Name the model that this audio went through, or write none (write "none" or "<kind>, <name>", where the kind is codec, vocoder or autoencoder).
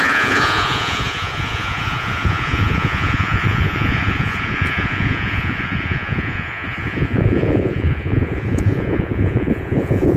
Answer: vocoder, Vocos